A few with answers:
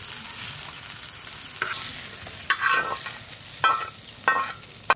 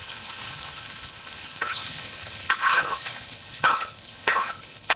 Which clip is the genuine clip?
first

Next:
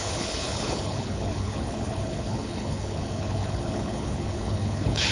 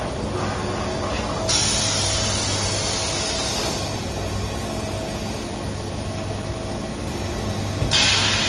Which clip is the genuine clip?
second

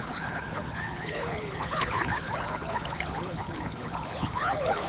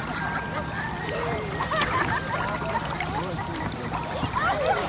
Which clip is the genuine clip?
second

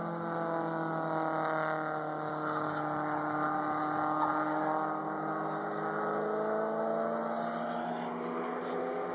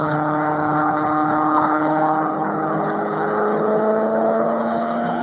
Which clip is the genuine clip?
first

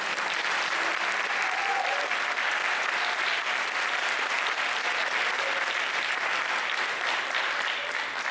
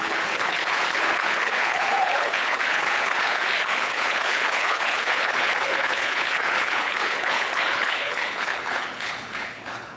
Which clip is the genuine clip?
first